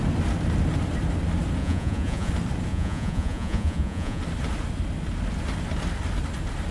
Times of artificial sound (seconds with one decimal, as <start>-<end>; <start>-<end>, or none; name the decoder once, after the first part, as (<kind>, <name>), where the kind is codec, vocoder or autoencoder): 1.6-2.3 (vocoder, Vocos); 2.7-4.2